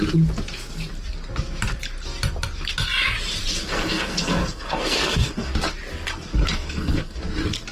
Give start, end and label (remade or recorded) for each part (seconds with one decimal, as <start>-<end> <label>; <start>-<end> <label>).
0.0-3.6 recorded; 3.6-5.5 remade; 5.5-6.5 recorded; 6.5-7.2 remade; 7.2-7.7 recorded